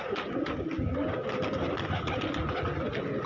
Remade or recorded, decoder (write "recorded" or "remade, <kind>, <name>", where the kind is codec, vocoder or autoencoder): recorded